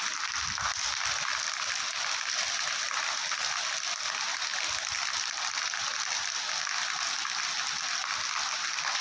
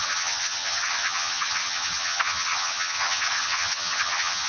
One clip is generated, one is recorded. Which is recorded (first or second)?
first